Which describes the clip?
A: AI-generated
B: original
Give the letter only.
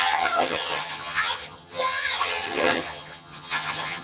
A